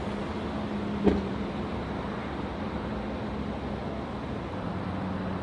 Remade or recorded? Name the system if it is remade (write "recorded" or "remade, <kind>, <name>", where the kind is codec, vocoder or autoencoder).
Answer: recorded